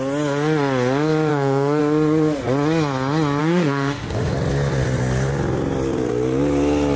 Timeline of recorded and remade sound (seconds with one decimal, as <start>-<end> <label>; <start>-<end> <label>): 0.0-1.3 recorded; 1.3-1.8 remade; 1.8-3.4 recorded; 3.4-4.3 remade; 4.3-7.0 recorded

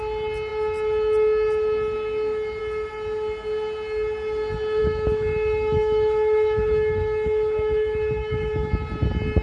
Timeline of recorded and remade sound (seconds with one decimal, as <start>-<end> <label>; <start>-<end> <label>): 0.0-4.8 recorded; 4.8-8.7 remade; 8.7-9.4 recorded

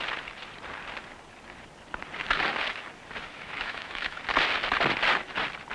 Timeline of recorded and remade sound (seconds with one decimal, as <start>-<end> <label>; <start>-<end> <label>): 0.0-3.3 recorded; 3.3-4.2 remade; 4.2-5.7 recorded

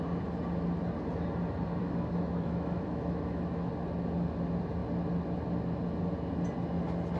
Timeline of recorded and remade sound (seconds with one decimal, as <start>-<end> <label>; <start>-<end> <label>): 0.0-1.8 recorded; 1.8-3.7 remade; 3.7-7.2 recorded